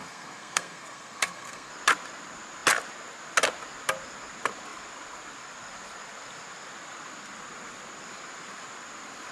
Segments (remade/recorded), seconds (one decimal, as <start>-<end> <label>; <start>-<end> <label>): 0.0-1.7 remade; 1.7-9.3 recorded